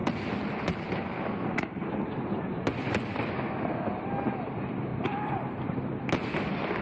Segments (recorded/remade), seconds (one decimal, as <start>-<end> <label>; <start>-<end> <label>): 0.0-6.8 recorded